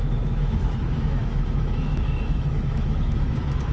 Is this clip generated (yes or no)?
yes